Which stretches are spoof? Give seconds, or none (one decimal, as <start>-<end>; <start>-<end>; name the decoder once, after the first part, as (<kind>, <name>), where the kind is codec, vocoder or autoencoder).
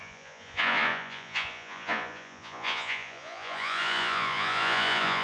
0.0-5.2 (vocoder, Vocos)